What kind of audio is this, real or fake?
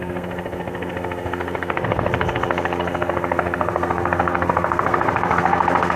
fake